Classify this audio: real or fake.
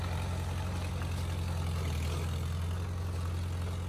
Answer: real